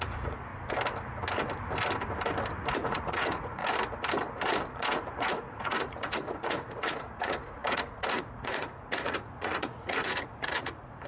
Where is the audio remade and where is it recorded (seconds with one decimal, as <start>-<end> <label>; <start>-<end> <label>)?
0.0-0.5 remade; 0.5-2.7 recorded; 2.7-3.6 remade; 3.6-4.7 recorded; 4.7-11.1 remade